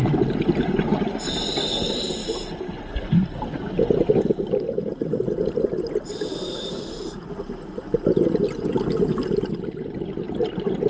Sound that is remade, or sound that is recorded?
recorded